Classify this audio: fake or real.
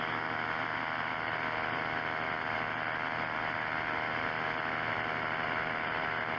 real